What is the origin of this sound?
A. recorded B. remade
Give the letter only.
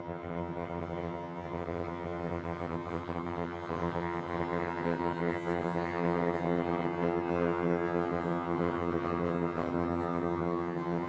B